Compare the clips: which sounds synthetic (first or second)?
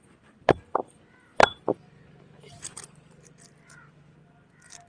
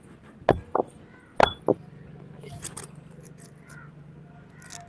first